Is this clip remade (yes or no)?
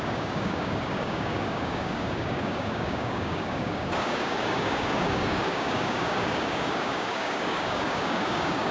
yes